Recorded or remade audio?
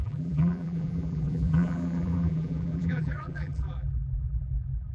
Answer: remade